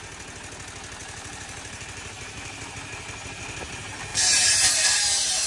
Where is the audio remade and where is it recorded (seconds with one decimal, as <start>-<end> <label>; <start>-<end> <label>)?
0.0-1.0 recorded; 1.0-2.7 remade; 2.7-4.1 recorded; 4.1-5.1 remade; 5.1-5.5 recorded